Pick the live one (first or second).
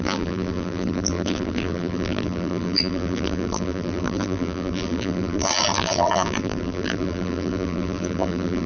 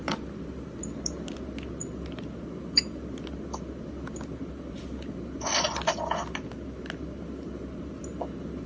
second